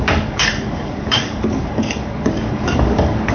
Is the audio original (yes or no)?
no